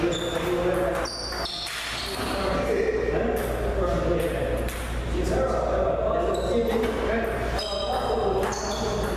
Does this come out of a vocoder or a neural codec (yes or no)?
no